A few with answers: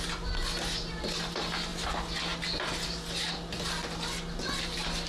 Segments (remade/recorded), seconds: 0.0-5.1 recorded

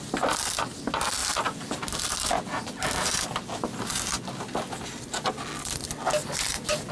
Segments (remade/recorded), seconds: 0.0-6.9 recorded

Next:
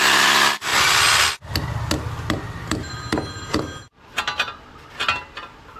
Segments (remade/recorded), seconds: 0.0-5.8 recorded

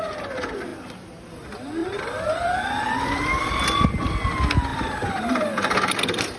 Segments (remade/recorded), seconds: 0.0-1.8 recorded; 1.8-3.5 remade; 3.5-4.7 recorded; 4.7-6.0 remade; 6.0-6.4 recorded

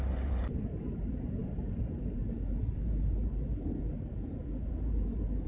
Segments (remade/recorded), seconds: 0.0-5.5 remade